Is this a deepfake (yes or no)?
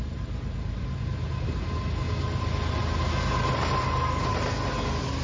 no